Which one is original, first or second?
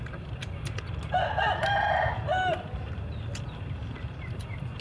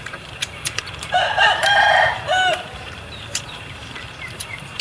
first